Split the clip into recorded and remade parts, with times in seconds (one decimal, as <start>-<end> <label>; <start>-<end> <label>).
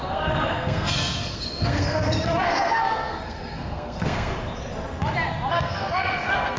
0.0-4.3 remade; 4.3-5.5 recorded; 5.5-6.6 remade